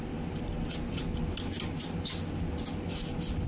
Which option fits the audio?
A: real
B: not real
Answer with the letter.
A